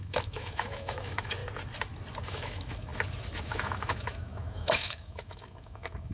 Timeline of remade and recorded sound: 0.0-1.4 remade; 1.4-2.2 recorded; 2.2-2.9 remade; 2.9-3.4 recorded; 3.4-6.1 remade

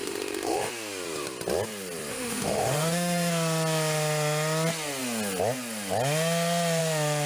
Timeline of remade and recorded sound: 0.0-0.7 remade; 0.7-2.1 recorded; 2.1-3.3 remade; 3.3-7.3 recorded